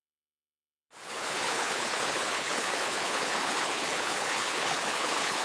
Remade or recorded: remade